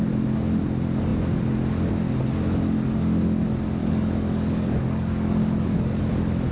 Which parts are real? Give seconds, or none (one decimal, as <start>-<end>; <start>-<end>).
0.0-3.8; 6.0-6.5